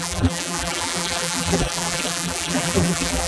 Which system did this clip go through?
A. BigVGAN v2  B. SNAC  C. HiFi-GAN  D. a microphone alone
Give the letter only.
A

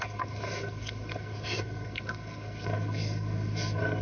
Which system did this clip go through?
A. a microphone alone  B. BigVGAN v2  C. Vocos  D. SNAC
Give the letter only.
D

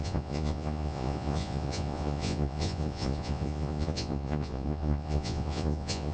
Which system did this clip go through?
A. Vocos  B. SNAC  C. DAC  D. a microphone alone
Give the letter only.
A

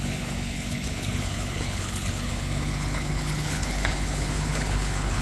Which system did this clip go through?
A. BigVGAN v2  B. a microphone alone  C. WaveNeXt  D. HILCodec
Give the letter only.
D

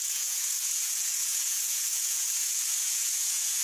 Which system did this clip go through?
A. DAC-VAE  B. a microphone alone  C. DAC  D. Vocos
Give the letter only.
D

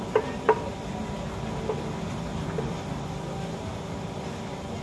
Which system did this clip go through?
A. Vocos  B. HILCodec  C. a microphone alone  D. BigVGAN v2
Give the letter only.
C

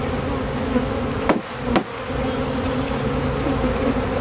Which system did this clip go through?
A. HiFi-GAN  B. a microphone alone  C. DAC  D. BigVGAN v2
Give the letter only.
B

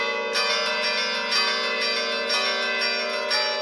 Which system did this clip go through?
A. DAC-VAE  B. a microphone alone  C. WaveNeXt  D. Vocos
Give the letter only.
B